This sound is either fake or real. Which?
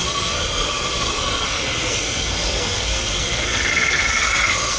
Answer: fake